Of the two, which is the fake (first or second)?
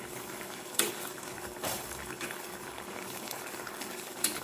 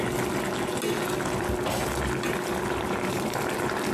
first